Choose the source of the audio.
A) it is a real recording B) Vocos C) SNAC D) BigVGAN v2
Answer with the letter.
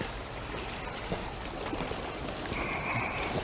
A